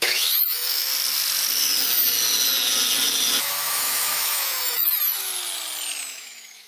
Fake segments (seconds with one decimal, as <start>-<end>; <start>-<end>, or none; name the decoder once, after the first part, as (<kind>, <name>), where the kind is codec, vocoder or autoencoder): 0.0-0.9 (autoencoder, DAC-VAE); 3.4-5.3; 6.0-6.7